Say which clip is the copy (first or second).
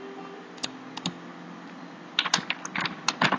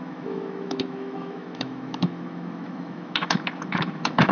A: second